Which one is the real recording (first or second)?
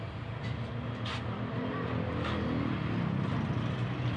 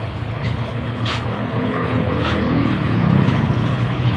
first